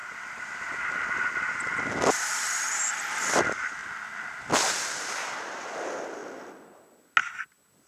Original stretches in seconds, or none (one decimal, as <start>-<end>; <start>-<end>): 3.8-4.4; 6.2-7.9